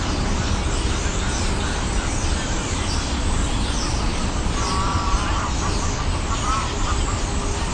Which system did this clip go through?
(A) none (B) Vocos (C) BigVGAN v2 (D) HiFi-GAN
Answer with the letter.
A